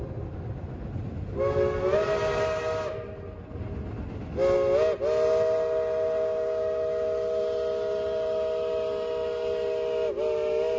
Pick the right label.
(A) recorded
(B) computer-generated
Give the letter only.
A